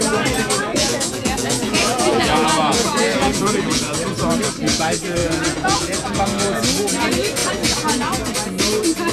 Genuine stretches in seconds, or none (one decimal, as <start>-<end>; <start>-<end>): 0.0-0.7; 3.8-5.2; 6.1-9.1